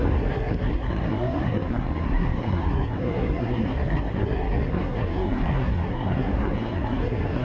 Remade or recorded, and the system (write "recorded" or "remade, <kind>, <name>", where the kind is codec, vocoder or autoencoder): remade, codec, SNAC